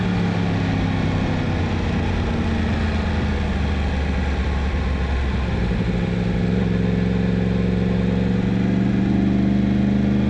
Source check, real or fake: real